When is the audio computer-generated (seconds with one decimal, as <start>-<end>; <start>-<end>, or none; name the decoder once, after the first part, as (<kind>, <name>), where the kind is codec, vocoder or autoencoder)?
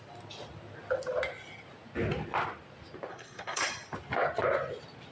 3.1-3.6 (codec, SNAC)